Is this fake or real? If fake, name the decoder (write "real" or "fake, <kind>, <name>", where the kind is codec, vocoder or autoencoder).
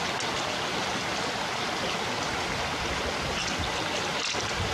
real